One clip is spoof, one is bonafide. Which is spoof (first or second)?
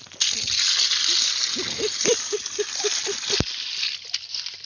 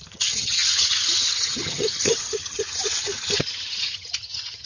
second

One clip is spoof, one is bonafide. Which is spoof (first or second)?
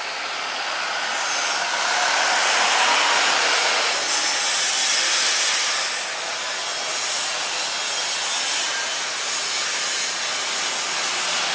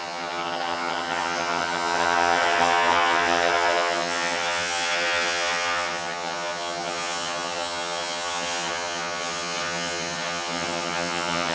second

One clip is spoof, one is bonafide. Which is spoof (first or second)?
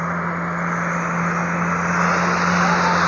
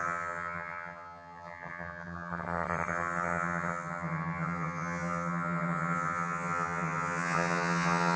second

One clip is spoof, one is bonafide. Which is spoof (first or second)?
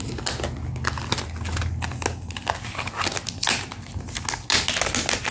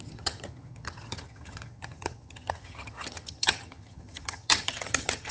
second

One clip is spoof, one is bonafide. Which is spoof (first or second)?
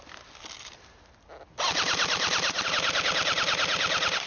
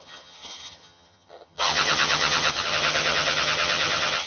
second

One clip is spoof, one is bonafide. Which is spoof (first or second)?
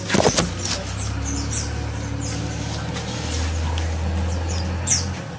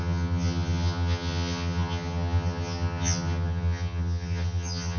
second